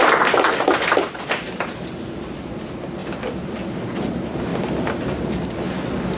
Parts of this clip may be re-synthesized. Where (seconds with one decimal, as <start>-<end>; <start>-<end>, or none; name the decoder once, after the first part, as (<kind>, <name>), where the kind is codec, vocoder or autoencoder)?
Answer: 3.0-4.1 (vocoder, BigVGAN v2); 4.5-5.2